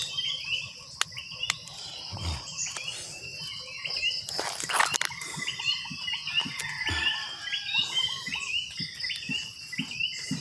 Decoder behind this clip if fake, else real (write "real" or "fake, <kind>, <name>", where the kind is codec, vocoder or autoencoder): real